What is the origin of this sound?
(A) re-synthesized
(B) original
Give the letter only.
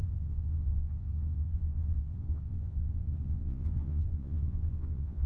A